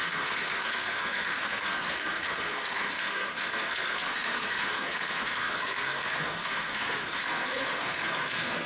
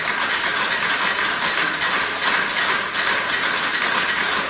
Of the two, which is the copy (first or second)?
first